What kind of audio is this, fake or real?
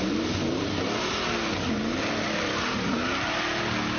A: real